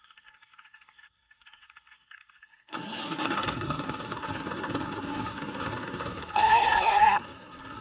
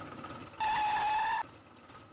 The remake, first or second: first